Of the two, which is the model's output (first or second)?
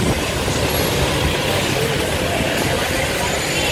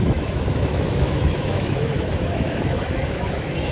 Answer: second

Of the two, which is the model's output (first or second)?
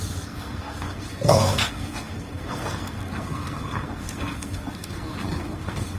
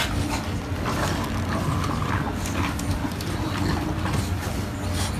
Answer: first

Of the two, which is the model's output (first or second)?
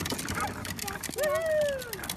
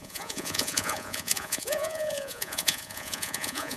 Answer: second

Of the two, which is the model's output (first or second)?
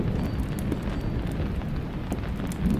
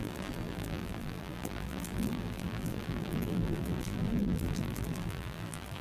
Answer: second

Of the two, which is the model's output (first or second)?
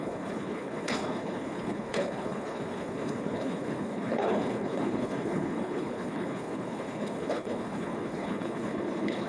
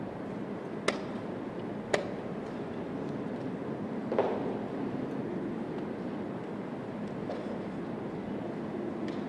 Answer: first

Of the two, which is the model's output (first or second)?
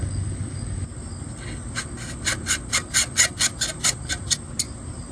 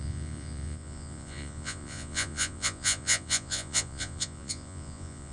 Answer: second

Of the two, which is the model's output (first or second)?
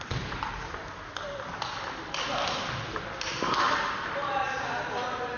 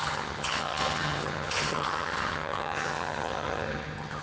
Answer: second